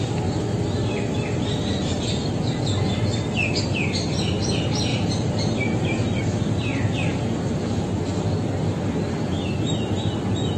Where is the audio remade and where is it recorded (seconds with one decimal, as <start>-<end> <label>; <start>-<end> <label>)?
0.0-0.8 recorded; 0.8-2.6 remade; 2.6-4.9 recorded; 4.9-6.2 remade; 6.2-6.7 recorded; 6.7-7.8 remade; 7.8-10.6 recorded